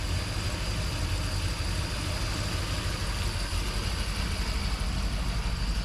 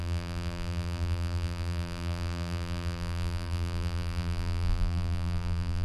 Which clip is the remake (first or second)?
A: second